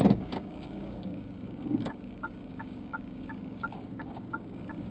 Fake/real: fake